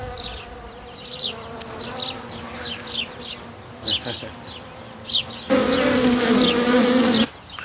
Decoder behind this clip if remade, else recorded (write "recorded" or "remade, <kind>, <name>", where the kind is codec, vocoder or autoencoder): recorded